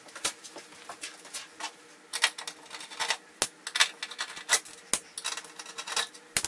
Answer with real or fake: real